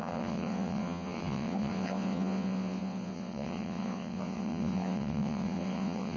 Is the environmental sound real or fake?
fake